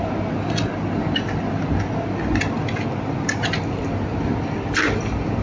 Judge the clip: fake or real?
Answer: real